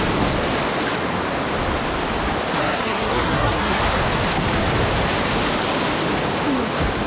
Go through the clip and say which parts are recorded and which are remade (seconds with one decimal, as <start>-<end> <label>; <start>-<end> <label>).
0.0-2.6 recorded; 2.6-3.8 remade; 3.8-7.1 recorded